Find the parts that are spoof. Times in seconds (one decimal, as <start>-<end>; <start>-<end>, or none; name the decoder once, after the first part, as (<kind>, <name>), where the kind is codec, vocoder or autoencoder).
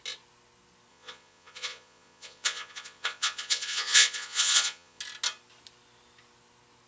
0.9-5.0 (vocoder, Vocos)